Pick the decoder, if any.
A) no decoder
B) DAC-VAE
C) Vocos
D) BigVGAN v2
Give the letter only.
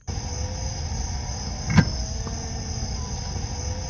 A